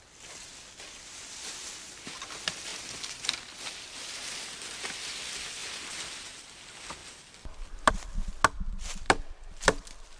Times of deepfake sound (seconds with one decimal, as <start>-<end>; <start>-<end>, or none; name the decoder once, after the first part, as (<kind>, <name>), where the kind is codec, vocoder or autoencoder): 7.0-7.9 (vocoder, BigVGAN v2); 8.7-9.5